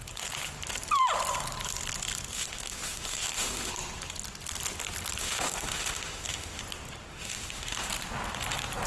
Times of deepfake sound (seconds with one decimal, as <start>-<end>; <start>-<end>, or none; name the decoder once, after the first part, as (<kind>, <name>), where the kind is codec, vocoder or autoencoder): 2.3-3.7 (autoencoder, DAC-VAE); 5.2-6.6; 7.1-7.9